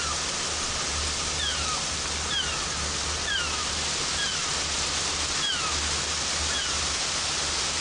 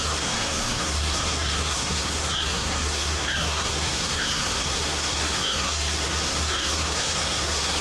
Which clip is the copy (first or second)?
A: second